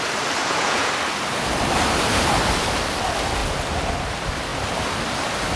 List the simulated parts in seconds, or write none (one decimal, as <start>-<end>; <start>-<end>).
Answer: 0.4-0.9